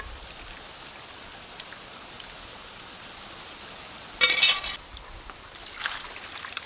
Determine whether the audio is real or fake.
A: real